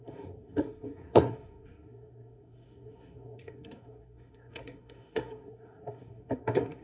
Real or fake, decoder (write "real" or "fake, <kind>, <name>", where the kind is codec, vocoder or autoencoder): fake, codec, SNAC